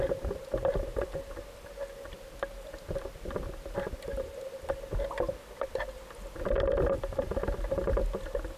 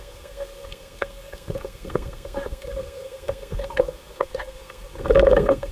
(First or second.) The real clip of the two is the first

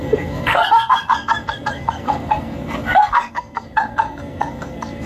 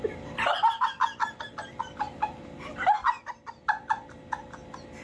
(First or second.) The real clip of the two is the second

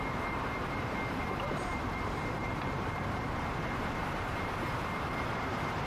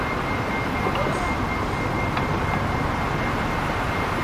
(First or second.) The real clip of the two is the second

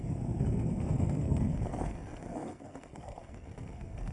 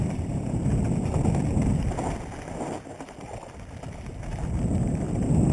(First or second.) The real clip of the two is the second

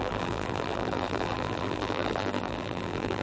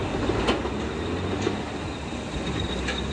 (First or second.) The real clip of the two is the second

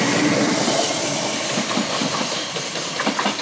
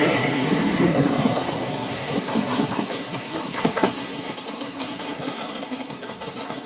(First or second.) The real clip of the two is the first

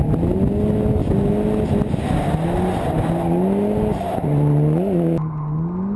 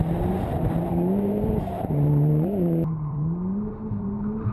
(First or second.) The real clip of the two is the first